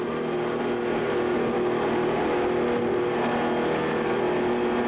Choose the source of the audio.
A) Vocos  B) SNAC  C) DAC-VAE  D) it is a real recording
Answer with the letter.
D